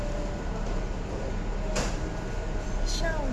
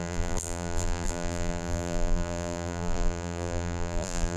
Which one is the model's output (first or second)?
second